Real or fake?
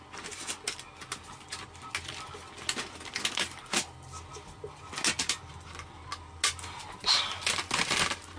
real